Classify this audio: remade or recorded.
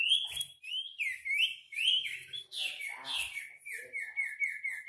recorded